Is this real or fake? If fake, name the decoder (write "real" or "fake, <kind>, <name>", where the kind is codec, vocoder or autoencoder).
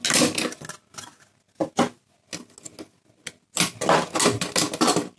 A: real